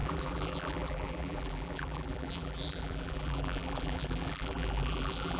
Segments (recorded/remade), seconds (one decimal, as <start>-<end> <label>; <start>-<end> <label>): 0.0-5.4 remade